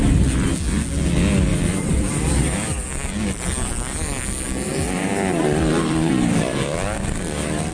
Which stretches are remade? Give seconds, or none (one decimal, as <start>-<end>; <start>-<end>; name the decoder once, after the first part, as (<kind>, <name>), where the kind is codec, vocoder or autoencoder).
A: 1.5-6.1 (vocoder, BigVGAN v2)